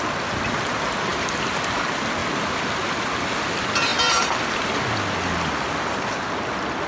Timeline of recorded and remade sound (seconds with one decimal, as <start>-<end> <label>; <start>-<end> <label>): 0.0-1.1 recorded; 1.1-1.7 remade; 1.7-3.9 recorded; 3.9-4.6 remade; 4.6-6.9 recorded